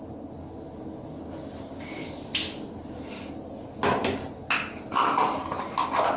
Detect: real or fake real